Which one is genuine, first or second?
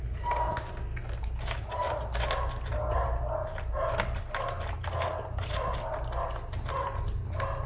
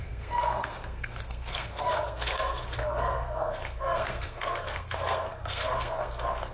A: first